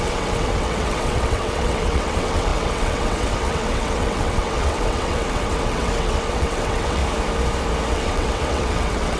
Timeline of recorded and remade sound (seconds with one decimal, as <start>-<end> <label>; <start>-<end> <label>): 0.0-7.0 remade; 7.0-7.9 recorded; 7.9-9.2 remade